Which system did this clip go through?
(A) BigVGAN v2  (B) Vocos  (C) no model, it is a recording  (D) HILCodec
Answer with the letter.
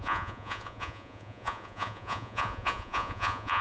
B